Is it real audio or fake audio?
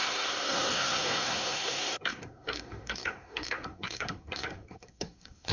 fake